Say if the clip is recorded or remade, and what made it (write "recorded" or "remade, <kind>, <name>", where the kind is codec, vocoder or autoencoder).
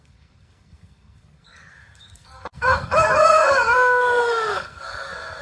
remade, codec, SNAC